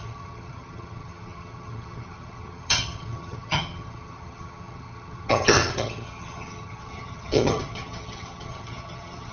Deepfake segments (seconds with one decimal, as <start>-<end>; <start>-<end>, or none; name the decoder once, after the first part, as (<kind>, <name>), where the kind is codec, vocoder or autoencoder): 0.0-9.3 (vocoder, HiFi-GAN)